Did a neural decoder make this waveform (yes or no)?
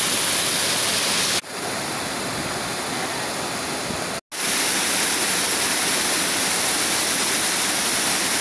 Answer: no